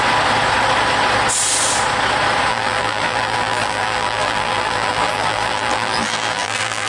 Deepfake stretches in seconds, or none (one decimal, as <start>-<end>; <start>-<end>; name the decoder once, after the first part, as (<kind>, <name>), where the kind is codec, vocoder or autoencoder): 2.5-6.9 (vocoder, BigVGAN v2)